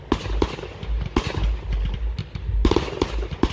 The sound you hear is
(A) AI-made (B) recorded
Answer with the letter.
B